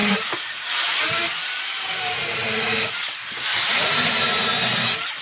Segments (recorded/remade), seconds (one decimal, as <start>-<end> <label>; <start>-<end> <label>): 0.0-3.1 remade; 3.1-3.5 recorded; 3.5-4.4 remade; 4.4-5.2 recorded